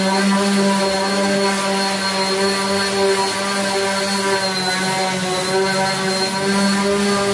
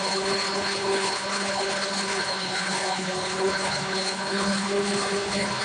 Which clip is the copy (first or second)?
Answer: second